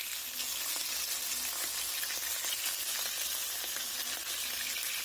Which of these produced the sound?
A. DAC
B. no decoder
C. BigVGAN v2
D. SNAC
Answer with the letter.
B